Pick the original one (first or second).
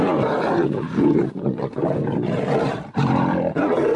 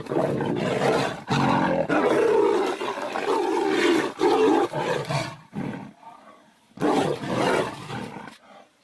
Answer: second